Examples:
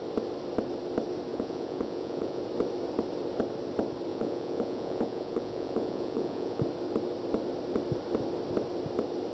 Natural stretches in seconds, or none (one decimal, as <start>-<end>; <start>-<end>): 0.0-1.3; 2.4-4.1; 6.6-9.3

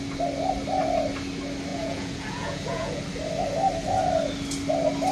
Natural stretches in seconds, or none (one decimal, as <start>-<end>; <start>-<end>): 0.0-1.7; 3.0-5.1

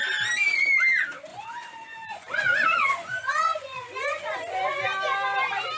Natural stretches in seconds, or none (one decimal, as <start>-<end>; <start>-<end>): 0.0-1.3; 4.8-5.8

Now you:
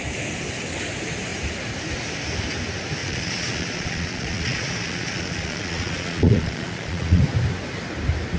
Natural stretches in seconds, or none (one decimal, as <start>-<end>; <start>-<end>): 0.0-3.0; 7.2-8.4

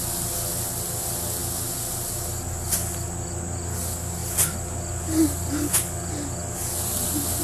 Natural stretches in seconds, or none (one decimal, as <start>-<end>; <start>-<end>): 0.0-7.4

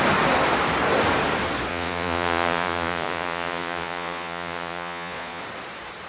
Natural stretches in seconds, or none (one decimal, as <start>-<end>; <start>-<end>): 0.0-1.7; 5.4-6.1